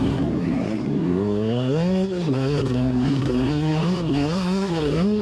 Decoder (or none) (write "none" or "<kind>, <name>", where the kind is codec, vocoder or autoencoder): codec, SNAC